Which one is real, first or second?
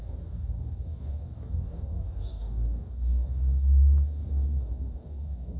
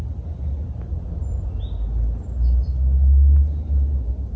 second